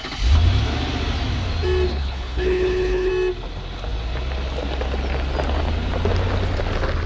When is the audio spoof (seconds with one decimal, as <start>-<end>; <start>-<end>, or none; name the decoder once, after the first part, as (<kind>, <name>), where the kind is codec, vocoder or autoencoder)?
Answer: 1.9-3.1 (codec, HILCodec)